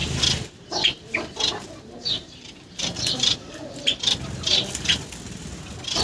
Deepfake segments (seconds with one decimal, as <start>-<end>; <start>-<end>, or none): 0.0-3.6